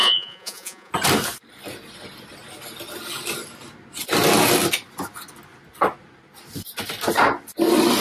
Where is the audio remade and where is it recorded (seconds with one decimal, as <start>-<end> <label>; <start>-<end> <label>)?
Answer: 0.0-0.9 remade; 0.9-8.0 recorded